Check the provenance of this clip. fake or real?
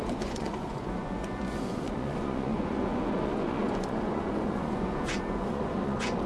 fake